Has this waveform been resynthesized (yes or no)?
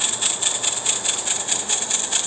no